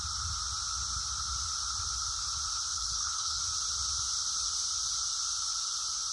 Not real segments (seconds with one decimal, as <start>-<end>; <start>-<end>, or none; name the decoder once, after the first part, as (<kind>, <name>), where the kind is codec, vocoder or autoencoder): 2.7-3.4 (codec, HILCodec)